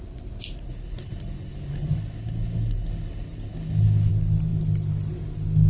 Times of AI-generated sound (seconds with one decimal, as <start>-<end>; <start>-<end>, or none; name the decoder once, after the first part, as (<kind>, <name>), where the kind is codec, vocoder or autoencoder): 0.7-4.1 (codec, HILCodec)